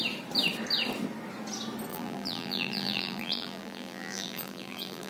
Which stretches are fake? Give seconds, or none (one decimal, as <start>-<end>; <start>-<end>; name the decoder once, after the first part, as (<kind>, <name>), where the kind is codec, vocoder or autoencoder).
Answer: 1.9-5.1 (vocoder, BigVGAN v2)